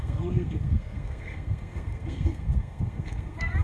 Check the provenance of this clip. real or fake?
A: fake